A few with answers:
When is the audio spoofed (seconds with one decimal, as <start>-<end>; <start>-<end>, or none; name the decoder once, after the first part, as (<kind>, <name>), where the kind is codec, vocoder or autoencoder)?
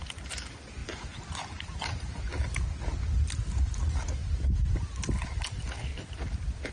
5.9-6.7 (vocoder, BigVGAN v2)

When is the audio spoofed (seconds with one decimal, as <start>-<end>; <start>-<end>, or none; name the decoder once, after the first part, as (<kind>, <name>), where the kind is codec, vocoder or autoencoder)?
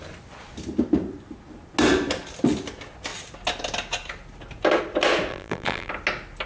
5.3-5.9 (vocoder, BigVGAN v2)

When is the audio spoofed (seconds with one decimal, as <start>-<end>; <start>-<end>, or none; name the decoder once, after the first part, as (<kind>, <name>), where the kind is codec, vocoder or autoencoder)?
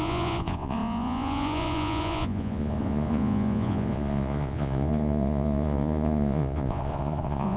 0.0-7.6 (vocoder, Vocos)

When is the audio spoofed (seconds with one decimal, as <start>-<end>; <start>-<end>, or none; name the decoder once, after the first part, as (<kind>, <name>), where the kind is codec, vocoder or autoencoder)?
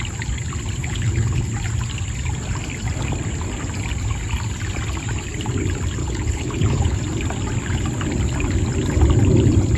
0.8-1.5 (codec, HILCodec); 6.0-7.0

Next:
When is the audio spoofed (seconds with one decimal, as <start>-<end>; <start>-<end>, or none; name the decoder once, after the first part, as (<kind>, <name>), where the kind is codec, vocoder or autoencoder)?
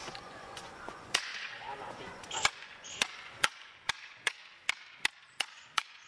0.0-4.4 (vocoder, Vocos); 5.3-6.1